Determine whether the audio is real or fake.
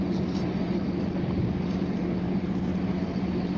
real